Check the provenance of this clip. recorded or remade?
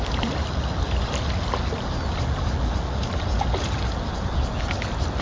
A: recorded